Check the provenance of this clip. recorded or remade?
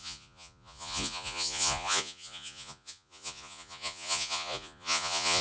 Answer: remade